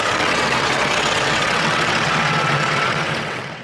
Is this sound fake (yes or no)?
yes